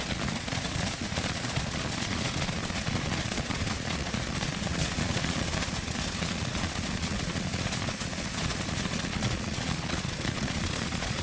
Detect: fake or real fake